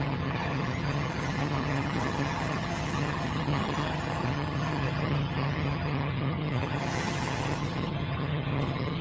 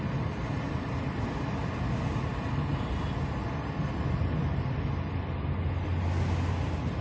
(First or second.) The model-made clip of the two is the first